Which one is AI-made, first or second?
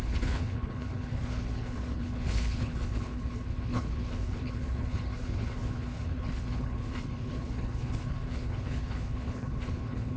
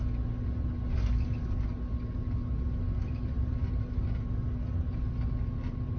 first